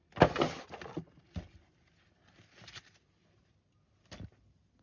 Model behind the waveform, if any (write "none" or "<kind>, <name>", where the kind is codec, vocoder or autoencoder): none